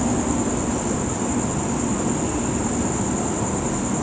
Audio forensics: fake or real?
real